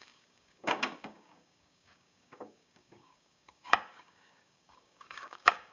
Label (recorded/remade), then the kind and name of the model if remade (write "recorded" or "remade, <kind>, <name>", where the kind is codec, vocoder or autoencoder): remade, codec, DAC